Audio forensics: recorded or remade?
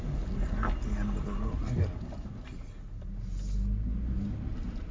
recorded